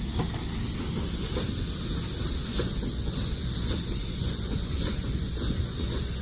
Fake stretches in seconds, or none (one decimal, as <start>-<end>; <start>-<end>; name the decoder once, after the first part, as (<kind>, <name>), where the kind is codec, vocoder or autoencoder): 2.5-6.2 (vocoder, Vocos)